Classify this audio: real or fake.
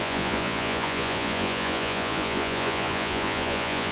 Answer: fake